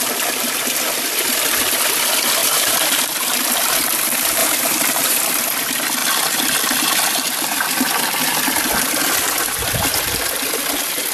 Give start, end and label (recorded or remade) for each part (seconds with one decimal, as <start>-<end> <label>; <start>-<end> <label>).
0.0-2.4 recorded; 2.4-3.4 remade; 3.4-4.4 recorded; 4.4-5.2 remade; 5.2-11.1 recorded